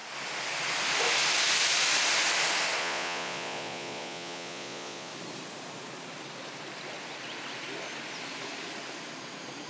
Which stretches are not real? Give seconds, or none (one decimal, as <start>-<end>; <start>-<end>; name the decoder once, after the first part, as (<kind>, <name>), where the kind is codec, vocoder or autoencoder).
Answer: 2.8-5.1 (vocoder, Vocos)